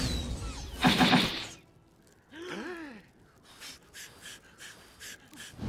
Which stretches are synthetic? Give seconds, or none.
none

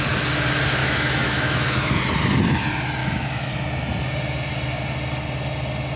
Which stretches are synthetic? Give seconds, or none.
0.8-2.0; 3.0-3.5

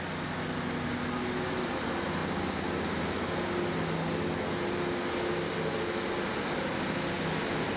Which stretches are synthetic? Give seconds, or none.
none